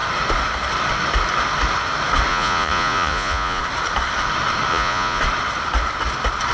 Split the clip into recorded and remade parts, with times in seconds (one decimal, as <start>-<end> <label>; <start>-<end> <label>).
0.0-2.3 recorded; 2.3-3.6 remade; 3.6-4.7 recorded; 4.7-5.2 remade; 5.2-6.5 recorded